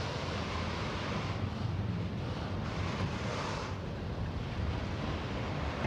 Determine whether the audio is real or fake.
real